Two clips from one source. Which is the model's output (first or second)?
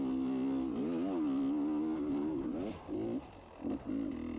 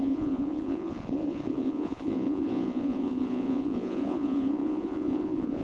second